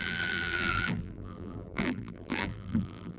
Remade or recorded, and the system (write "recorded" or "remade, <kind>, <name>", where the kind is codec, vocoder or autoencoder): remade, vocoder, BigVGAN v2